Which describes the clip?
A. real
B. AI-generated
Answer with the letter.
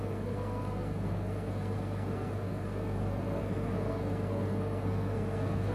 B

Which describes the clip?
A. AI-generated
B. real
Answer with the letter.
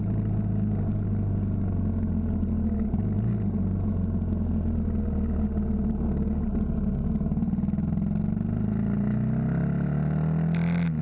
B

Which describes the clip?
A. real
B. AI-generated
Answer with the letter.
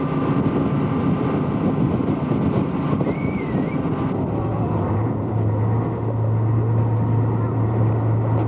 A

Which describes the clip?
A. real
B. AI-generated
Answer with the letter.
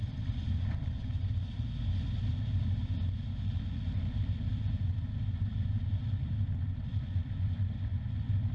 B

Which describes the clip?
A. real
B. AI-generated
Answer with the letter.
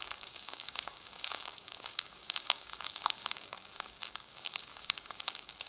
B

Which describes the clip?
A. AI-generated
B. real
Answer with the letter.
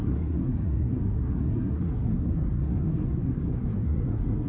A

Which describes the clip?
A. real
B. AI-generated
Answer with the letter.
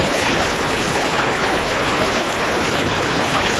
B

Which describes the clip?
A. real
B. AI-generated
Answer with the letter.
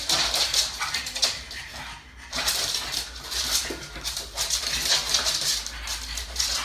A